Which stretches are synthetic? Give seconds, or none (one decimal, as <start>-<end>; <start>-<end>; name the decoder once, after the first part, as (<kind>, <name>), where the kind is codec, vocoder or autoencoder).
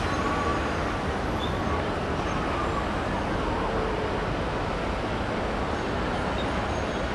none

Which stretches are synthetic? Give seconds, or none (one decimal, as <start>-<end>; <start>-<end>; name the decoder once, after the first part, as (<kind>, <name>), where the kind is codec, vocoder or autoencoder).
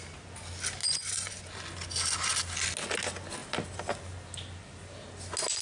0.8-1.4 (vocoder, Vocos)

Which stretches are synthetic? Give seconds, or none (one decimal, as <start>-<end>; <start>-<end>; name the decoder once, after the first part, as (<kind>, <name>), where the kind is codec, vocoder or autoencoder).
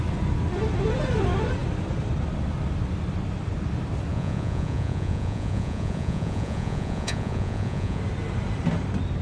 4.1-8.0 (vocoder, Vocos)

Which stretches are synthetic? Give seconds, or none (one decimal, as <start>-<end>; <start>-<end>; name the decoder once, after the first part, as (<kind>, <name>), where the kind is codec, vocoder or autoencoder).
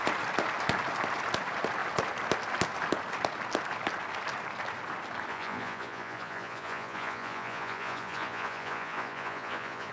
5.3-9.9 (vocoder, Vocos)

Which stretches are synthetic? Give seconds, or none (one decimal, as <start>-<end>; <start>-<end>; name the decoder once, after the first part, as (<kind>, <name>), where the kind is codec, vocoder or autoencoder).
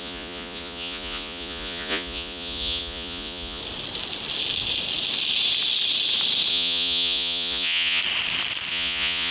0.0-3.6 (vocoder, Vocos); 6.5-8.0; 8.7-9.3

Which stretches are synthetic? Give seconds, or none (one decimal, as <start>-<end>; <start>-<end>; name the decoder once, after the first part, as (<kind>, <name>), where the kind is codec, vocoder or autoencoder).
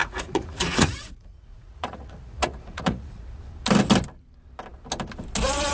0.0-3.4 (vocoder, Vocos)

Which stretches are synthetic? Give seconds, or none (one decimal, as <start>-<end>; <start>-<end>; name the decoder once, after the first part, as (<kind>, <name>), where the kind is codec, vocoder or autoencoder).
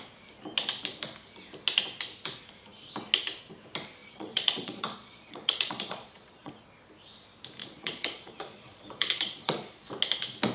4.0-6.5 (vocoder, Vocos); 7.6-9.9